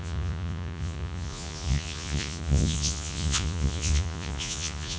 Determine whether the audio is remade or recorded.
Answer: remade